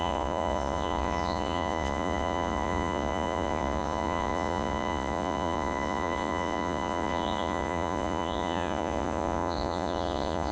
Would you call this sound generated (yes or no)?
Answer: yes